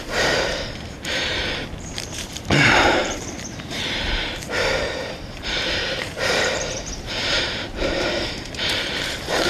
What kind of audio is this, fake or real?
fake